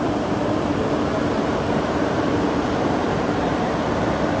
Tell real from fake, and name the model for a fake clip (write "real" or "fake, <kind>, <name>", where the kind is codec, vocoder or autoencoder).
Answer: fake, vocoder, BigVGAN v2